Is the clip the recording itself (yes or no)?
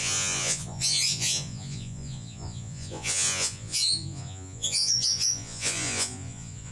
no